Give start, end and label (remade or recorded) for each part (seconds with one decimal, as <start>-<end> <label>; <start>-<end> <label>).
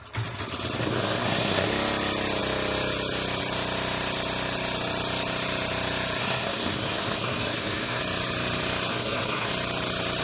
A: 0.0-0.8 recorded; 0.8-1.7 remade; 1.7-6.2 recorded; 6.2-8.0 remade; 8.0-8.9 recorded; 8.9-9.5 remade; 9.5-10.2 recorded